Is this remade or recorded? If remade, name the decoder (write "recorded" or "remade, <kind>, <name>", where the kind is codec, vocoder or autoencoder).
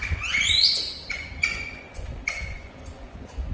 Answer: remade, vocoder, Vocos